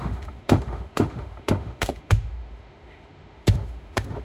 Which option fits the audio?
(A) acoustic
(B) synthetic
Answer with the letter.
B